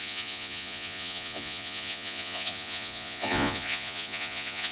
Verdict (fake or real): fake